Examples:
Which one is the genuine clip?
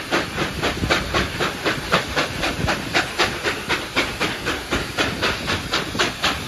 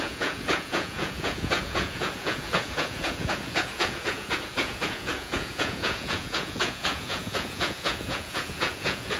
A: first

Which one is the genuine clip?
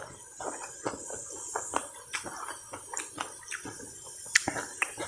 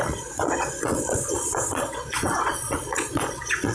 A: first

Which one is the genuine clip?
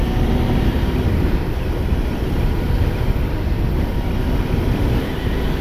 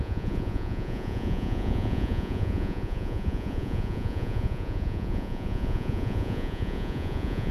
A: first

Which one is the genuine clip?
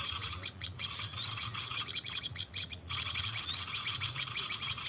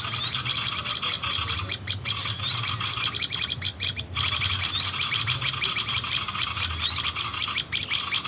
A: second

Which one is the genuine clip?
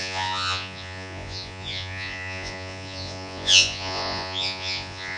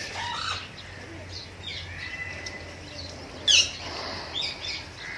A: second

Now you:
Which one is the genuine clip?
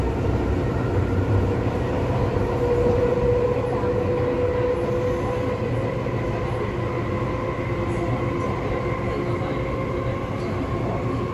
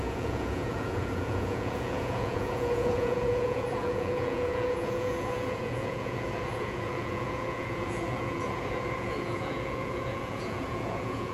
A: first